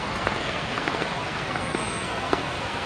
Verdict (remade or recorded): remade